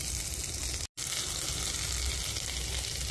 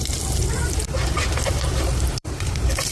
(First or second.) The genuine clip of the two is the first